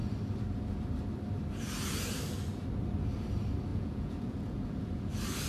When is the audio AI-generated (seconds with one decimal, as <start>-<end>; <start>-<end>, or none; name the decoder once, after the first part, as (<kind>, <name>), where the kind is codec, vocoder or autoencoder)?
3.7-5.1 (vocoder, Vocos)